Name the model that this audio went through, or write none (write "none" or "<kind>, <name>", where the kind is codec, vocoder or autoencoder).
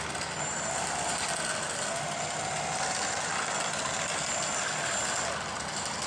none